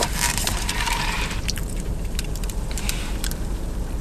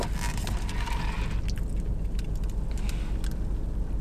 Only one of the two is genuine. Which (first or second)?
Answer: second